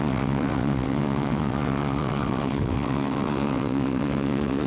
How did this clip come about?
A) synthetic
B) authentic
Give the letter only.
A